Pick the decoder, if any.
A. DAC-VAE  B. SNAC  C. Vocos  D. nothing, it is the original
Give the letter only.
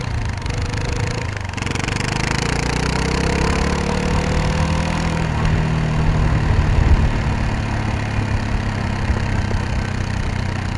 D